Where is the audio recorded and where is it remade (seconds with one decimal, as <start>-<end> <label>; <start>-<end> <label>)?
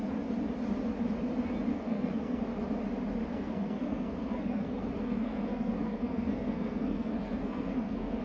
0.0-1.7 recorded; 1.7-2.4 remade; 2.4-3.3 recorded; 3.3-8.2 remade